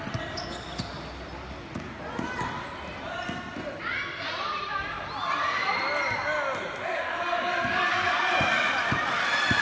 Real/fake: real